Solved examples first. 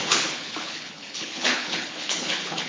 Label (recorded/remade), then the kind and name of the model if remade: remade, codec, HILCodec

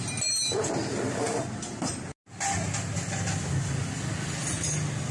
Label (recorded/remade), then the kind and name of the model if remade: recorded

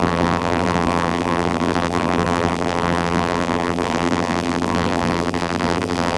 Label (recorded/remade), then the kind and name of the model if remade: remade, vocoder, BigVGAN v2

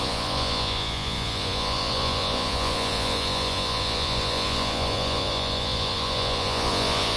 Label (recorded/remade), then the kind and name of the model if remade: remade, vocoder, Vocos